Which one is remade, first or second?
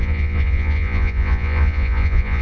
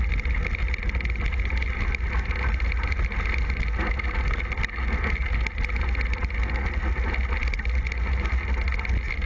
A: first